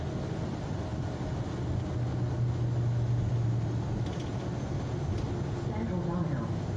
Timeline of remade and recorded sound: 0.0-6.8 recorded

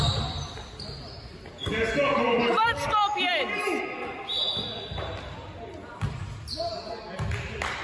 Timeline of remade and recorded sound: 0.0-7.8 recorded

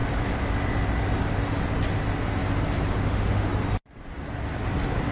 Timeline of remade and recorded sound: 0.0-2.9 recorded; 2.9-3.5 remade; 3.5-5.1 recorded

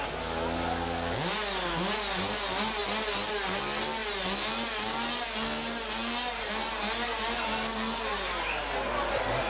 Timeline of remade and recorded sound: 0.0-9.5 recorded

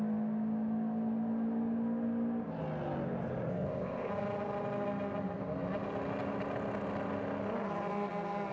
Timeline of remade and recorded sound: 0.0-3.5 recorded; 3.5-4.1 remade; 4.1-8.5 recorded

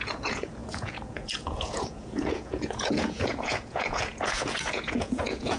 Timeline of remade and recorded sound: 0.0-5.6 remade

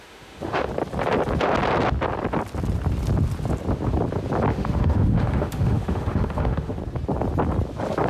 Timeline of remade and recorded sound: 0.0-0.7 remade; 0.7-4.5 recorded; 4.5-6.8 remade; 6.8-8.1 recorded

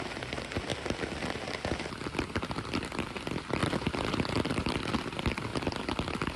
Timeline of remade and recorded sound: 0.0-0.7 remade; 0.7-2.3 recorded; 2.3-5.5 remade; 5.5-6.4 recorded